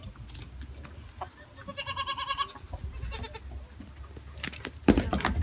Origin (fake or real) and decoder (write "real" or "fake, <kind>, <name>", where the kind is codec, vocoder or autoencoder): real